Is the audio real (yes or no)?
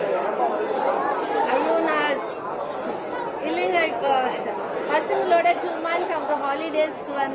yes